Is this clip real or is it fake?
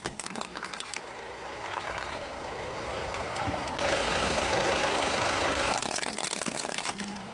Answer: fake